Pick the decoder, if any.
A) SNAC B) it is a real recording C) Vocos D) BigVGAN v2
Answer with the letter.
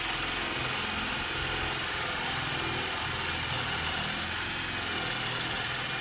B